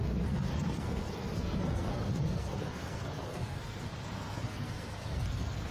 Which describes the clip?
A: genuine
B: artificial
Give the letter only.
B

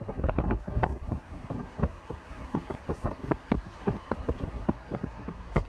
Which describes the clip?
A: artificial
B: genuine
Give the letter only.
A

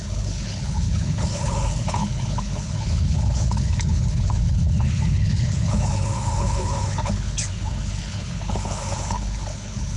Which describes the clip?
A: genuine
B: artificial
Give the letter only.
B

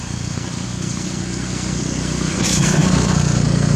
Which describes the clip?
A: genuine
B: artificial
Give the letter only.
B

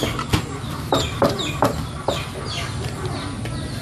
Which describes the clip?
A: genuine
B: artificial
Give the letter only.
A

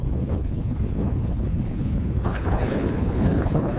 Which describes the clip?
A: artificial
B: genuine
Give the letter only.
A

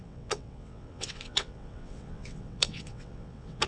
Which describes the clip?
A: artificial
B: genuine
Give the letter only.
A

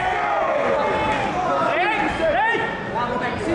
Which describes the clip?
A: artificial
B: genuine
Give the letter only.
B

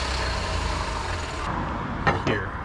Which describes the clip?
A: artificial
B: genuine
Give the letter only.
B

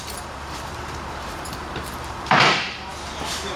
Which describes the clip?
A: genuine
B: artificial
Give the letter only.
B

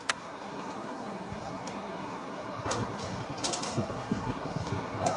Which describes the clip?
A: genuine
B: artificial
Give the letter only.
B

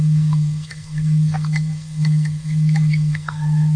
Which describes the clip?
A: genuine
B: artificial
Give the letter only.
B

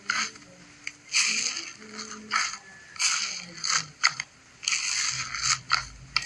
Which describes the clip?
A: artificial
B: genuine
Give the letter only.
B